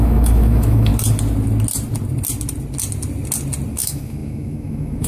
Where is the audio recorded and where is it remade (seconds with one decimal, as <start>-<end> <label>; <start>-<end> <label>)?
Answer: 0.0-0.9 remade; 0.9-3.7 recorded; 3.7-5.1 remade